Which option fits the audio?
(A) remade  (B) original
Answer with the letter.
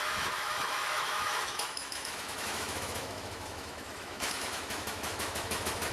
A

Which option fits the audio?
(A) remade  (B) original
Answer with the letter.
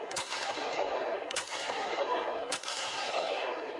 A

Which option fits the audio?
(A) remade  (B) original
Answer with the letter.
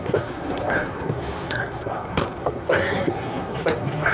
A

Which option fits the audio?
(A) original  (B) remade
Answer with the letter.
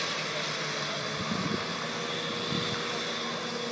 A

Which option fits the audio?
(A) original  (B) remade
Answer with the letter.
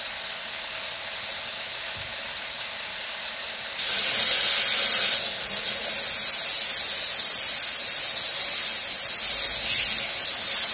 A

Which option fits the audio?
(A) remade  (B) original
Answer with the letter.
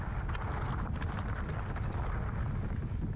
B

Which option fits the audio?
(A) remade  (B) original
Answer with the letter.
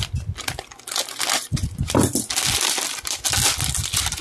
B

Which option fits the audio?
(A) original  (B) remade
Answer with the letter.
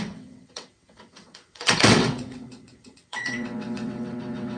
B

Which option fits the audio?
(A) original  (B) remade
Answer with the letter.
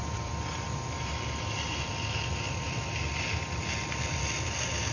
A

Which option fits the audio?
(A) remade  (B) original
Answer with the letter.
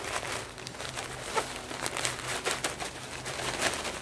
B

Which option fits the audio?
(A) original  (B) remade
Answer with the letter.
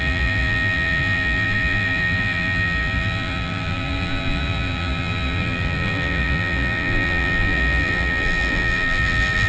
B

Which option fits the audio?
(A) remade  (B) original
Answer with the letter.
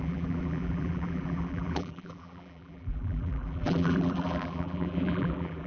A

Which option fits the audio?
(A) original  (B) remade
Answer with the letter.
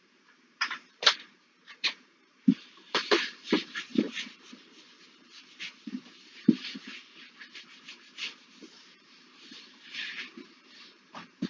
B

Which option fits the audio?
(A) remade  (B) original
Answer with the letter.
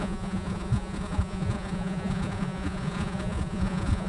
A